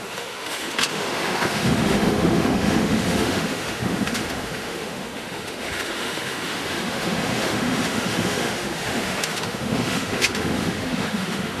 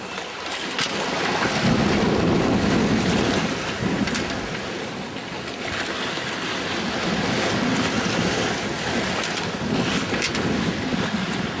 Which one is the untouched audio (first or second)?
second